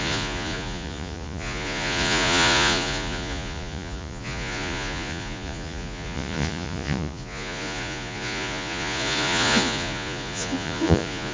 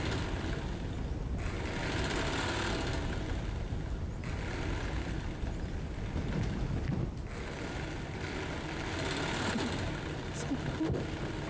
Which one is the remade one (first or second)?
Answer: first